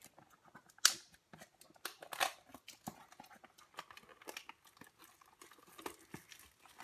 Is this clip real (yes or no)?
yes